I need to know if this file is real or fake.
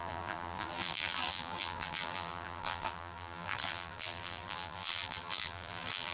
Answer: fake